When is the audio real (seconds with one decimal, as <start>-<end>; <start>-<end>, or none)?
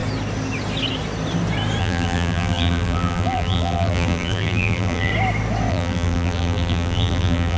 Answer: 0.0-1.8; 5.1-5.7